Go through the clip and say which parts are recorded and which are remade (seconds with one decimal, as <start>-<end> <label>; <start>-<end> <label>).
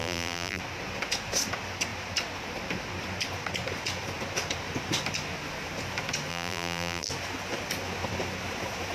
0.0-0.6 remade; 0.6-6.3 recorded; 6.3-7.1 remade; 7.1-8.9 recorded